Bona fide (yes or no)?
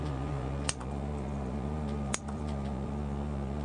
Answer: no